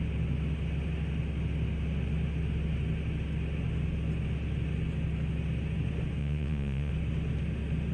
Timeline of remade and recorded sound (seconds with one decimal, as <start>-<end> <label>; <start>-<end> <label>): 0.0-6.2 recorded; 6.2-6.9 remade; 6.9-7.9 recorded